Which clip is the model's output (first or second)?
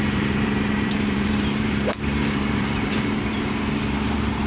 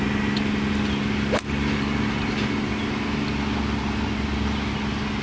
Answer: first